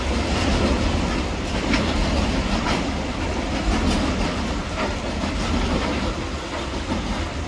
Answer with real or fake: real